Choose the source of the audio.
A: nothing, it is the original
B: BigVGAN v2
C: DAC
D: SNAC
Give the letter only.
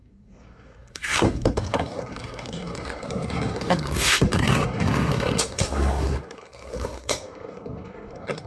D